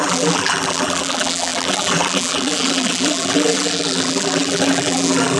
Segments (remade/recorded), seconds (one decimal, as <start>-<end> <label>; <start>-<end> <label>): 0.0-5.4 remade